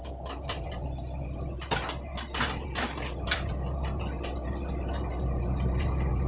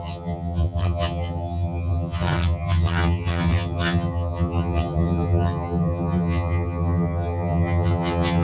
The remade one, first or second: second